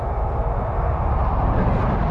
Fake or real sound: real